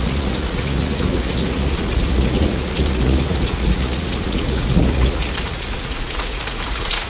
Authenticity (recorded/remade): remade